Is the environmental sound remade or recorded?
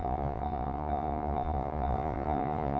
remade